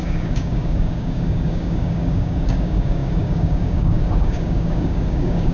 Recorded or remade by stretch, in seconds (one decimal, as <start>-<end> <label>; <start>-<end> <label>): 0.0-5.5 remade